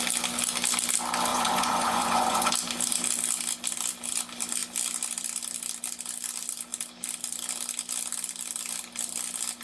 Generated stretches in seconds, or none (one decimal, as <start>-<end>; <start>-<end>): 1.3-2.5